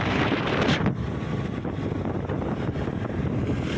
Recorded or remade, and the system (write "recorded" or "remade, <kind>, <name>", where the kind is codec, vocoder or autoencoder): recorded